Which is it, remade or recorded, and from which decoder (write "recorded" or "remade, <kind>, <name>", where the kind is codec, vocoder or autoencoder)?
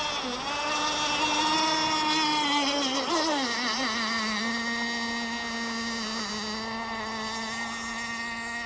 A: recorded